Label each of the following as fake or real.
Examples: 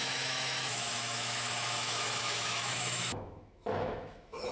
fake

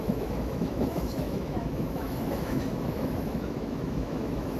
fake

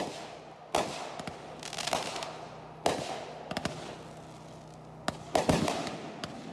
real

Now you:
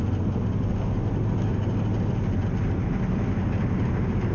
real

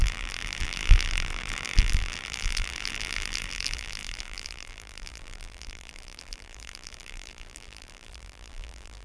fake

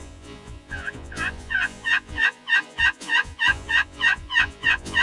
fake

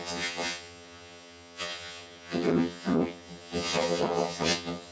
fake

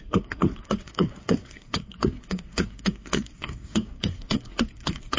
fake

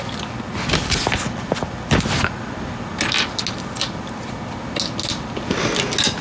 real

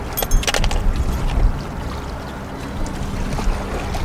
real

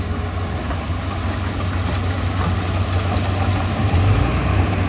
real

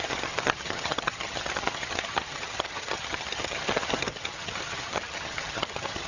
fake